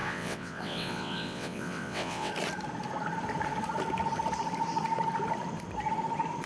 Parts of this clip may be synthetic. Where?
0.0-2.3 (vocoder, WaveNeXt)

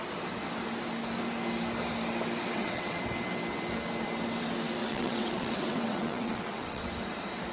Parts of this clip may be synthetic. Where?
2.4-3.0 (vocoder, WaveNeXt); 4.8-6.8

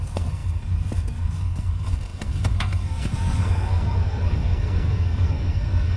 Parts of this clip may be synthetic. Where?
0.0-6.0 (codec, SNAC)

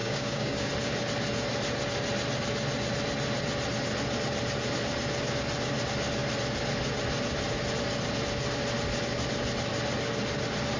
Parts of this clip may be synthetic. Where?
0.0-0.7 (codec, DAC)

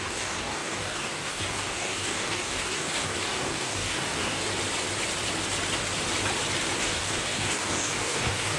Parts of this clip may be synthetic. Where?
0.0-4.5 (codec, DAC); 6.8-8.6

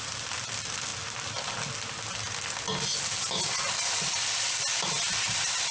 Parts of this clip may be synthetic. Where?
0.0-0.9 (vocoder, BigVGAN v2); 4.3-5.7

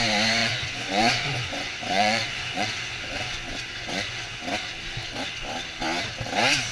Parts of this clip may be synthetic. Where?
0.4-4.4 (vocoder, Vocos)

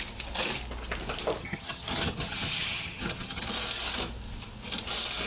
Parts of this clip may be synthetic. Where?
1.4-3.4 (vocoder, HiFi-GAN)